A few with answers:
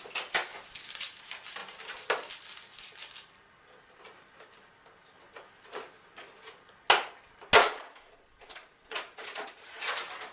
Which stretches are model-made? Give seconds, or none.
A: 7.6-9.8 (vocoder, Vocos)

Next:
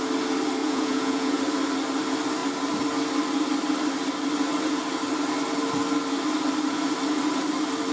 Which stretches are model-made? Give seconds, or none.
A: 0.6-1.4 (vocoder, Vocos)

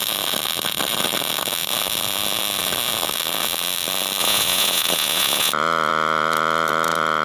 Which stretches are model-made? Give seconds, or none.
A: 4.2-5.5 (vocoder, Vocos)

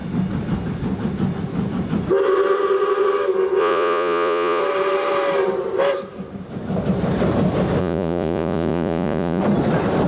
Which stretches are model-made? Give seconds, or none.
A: 3.6-4.6 (vocoder, Vocos); 7.8-9.4

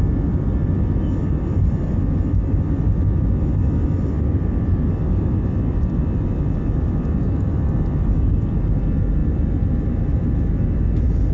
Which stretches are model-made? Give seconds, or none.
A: none

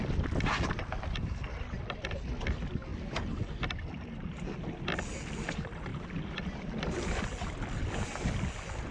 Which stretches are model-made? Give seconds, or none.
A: none